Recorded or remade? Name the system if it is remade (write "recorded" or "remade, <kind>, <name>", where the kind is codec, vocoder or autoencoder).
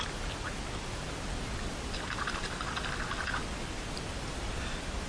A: recorded